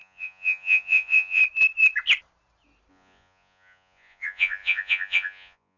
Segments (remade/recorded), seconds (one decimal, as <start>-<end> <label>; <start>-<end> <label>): 0.0-1.4 remade; 1.4-2.9 recorded; 2.9-5.8 remade